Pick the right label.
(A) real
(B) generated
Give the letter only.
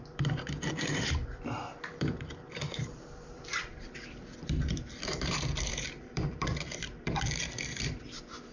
B